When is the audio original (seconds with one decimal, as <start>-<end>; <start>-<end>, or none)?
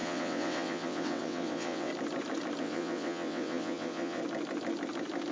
1.9-2.6; 4.2-5.3